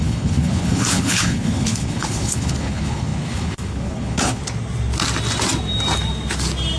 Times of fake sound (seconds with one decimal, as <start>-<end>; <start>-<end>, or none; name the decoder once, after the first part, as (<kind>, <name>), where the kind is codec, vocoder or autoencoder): 0.0-4.4 (codec, HILCodec)